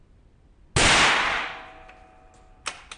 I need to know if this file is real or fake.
real